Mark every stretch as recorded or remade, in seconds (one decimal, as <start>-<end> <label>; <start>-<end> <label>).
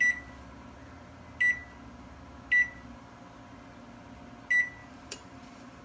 0.0-4.8 recorded; 4.8-5.8 remade